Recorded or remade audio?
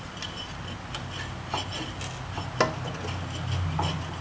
recorded